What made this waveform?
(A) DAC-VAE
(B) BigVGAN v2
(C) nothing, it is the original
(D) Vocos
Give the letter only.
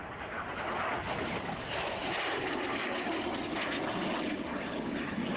C